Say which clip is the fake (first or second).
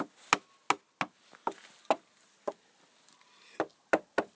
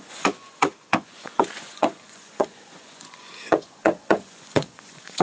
second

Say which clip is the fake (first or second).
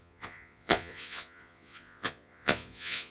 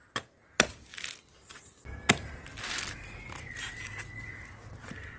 first